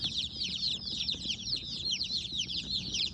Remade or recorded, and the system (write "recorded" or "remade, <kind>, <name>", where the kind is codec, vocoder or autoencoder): remade, vocoder, Vocos